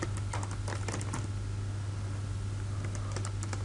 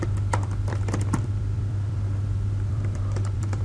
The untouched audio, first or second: first